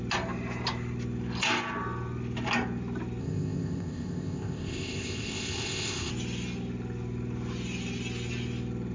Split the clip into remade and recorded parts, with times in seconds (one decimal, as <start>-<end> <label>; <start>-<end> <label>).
0.0-3.2 recorded; 3.2-6.1 remade; 6.1-8.9 recorded